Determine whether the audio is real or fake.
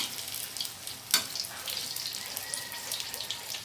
real